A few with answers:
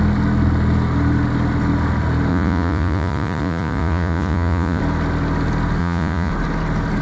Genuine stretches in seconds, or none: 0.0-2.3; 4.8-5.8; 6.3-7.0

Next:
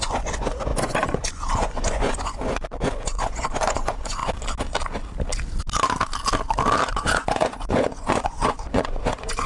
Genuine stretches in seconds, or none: 4.2-6.9

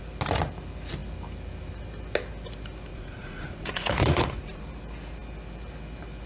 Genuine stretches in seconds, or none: 0.0-2.9; 4.6-6.3